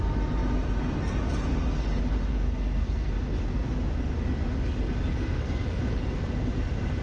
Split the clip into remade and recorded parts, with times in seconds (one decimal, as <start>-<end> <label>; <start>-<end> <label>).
0.0-2.3 recorded; 2.3-3.1 remade; 3.1-5.1 recorded; 5.1-5.8 remade; 5.8-7.0 recorded